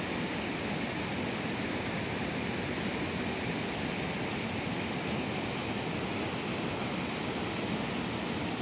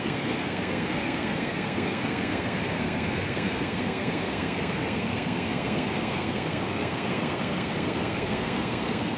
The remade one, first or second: second